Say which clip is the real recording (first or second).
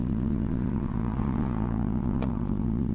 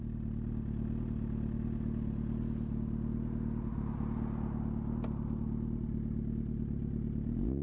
second